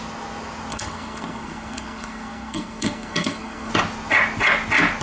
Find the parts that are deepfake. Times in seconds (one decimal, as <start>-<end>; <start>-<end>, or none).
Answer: 0.7-3.7